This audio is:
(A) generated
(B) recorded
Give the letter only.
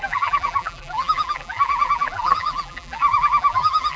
A